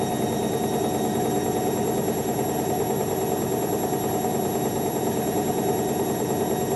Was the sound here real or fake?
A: real